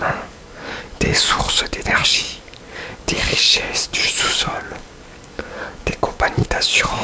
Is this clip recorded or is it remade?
remade